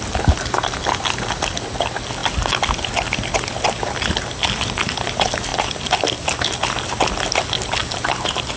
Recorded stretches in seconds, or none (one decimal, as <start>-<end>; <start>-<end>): 0.0-8.6